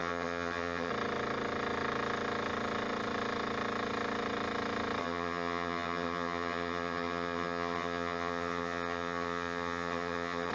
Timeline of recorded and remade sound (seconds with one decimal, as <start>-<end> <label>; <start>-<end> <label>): 0.0-0.9 remade; 0.9-5.0 recorded; 5.0-10.5 remade